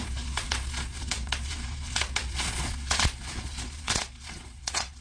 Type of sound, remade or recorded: remade